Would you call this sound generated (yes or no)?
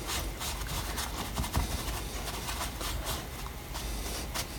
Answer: no